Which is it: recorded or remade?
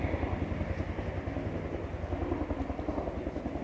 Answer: recorded